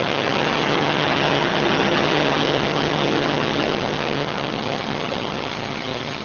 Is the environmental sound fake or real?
fake